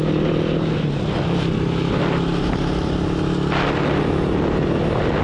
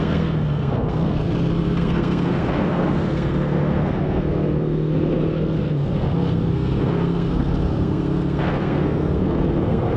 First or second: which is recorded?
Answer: first